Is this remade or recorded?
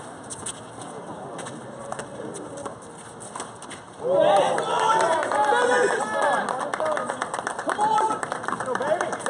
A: recorded